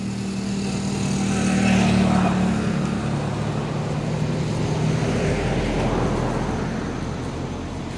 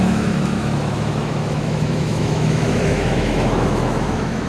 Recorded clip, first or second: first